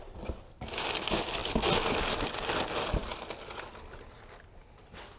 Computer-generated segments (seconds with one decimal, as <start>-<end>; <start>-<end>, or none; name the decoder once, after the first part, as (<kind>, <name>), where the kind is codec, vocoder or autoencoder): none